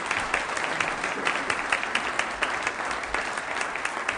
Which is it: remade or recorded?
recorded